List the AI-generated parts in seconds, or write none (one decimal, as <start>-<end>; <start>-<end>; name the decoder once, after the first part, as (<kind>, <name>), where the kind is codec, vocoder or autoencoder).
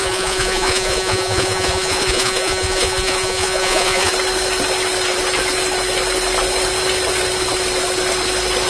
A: 0.0-4.1 (vocoder, Vocos)